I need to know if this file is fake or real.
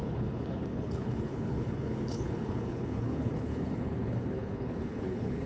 fake